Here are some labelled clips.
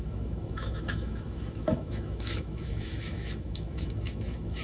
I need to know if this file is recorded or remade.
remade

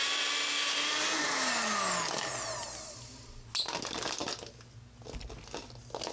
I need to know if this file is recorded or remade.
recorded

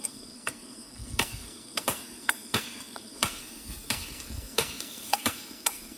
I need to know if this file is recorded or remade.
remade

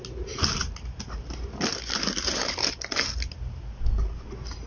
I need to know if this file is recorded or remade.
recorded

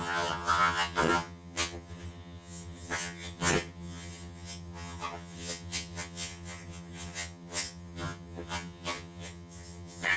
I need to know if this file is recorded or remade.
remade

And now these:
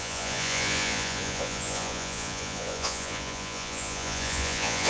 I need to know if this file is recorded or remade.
remade